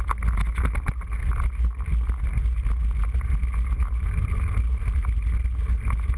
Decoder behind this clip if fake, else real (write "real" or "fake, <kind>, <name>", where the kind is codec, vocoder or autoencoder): real